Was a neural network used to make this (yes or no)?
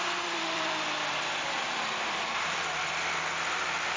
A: yes